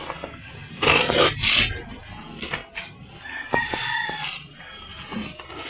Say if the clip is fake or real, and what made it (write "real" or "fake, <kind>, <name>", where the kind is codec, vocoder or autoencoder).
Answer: real